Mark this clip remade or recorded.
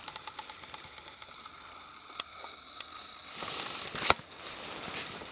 remade